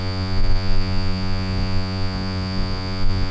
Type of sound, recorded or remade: remade